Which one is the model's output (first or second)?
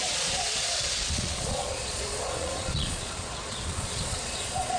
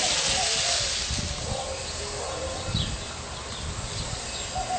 first